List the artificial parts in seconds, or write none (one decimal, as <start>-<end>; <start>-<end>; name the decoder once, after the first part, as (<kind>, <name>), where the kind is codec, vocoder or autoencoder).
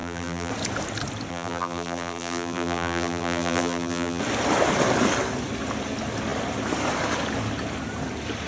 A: 0.0-0.5 (vocoder, BigVGAN v2); 1.3-4.2